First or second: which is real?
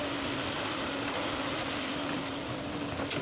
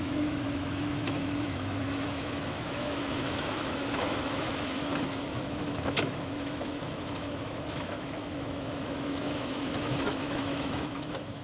first